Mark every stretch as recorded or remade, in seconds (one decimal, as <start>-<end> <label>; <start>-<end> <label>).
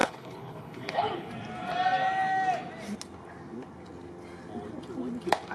0.0-1.3 remade; 1.3-5.5 recorded